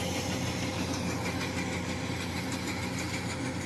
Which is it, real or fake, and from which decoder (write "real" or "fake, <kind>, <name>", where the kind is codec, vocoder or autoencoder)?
real